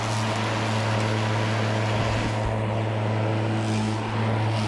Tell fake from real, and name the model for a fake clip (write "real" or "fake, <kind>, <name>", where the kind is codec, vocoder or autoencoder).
real